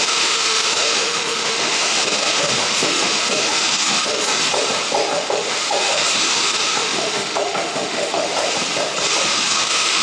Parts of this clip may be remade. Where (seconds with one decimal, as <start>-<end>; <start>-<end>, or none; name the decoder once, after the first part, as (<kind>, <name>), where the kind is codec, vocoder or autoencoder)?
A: 0.0-4.5 (autoencoder, DAC-VAE); 5.1-8.3; 9.2-10.0